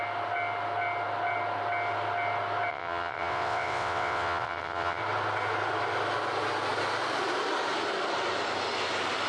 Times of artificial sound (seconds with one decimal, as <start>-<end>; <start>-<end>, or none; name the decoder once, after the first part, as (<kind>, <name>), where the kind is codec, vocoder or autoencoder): 2.7-5.0 (vocoder, WaveNeXt)